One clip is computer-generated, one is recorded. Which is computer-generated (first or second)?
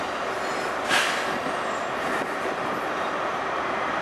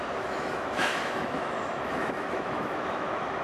second